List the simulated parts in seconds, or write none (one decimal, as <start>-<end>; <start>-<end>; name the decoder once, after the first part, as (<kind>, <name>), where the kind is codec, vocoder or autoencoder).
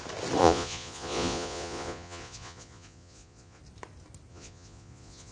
0.4-3.6 (vocoder, Vocos); 4.3-5.3